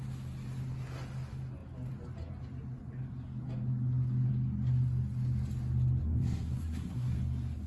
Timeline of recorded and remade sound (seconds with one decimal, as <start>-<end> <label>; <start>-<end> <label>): 0.0-6.0 recorded; 6.0-7.2 remade; 7.2-7.7 recorded